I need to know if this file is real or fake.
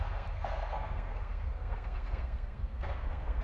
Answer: fake